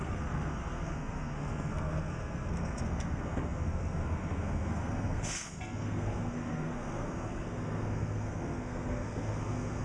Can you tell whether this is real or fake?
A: fake